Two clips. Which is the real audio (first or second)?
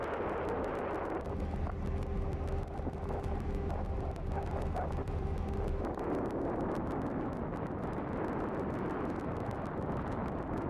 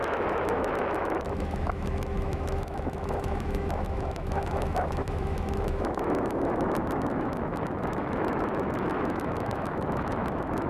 first